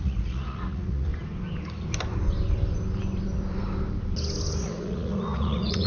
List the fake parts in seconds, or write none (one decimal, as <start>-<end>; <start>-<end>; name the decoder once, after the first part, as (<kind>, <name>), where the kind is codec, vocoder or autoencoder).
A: 0.0-1.1 (vocoder, Vocos); 4.6-5.9